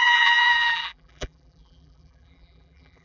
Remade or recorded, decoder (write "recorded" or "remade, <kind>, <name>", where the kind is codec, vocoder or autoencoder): remade, vocoder, BigVGAN v2